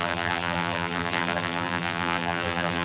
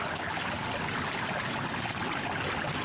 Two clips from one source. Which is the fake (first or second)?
first